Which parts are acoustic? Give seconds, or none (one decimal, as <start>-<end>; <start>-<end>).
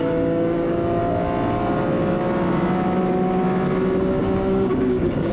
1.0-4.2